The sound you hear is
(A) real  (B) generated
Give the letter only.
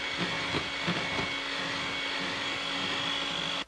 A